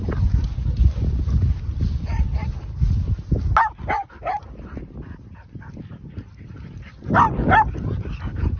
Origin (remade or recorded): recorded